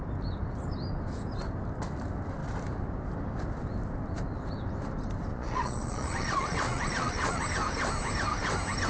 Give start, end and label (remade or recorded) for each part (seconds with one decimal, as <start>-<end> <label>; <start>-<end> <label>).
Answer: 0.0-5.3 recorded; 5.3-7.4 remade; 7.4-8.9 recorded